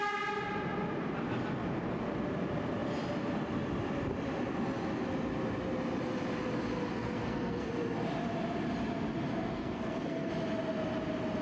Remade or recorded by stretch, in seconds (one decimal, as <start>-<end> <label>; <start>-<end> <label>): 0.0-6.9 recorded; 6.9-7.7 remade; 7.7-9.5 recorded; 9.5-10.3 remade; 10.3-11.4 recorded